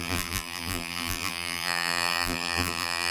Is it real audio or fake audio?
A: fake